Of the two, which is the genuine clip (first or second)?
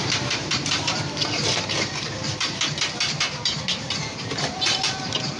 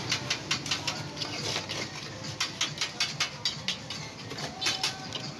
second